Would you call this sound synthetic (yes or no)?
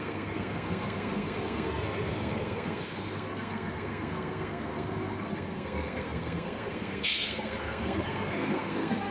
yes